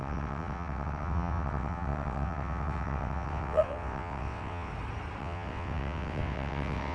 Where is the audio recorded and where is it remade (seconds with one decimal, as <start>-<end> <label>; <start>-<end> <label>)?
0.0-4.7 remade; 4.7-5.2 recorded; 5.2-6.9 remade